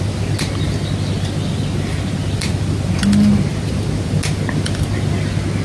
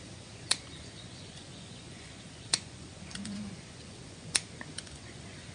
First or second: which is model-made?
second